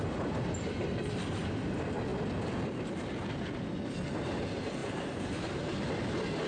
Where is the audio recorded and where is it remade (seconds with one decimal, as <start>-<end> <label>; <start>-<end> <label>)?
0.0-6.5 recorded